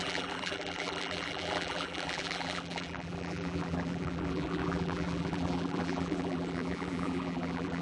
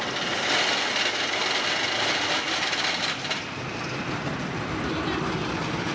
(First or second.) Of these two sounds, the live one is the second